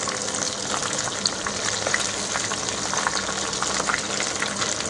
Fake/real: real